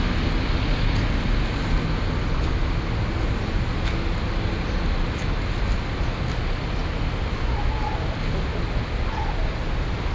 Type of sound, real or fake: real